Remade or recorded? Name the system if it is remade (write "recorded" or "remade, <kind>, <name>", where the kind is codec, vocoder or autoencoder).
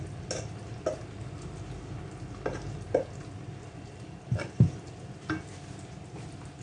recorded